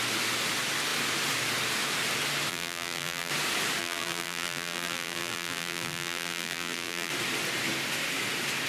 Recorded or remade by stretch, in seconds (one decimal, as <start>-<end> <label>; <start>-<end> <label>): 0.0-2.5 recorded; 2.5-3.3 remade; 3.3-3.8 recorded; 3.8-7.1 remade; 7.1-8.7 recorded